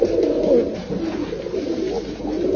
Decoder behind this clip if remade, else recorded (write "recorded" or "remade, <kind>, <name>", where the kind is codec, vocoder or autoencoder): recorded